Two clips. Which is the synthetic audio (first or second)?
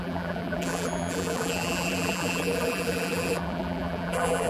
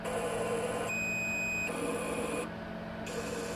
first